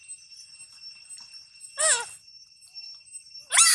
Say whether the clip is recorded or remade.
recorded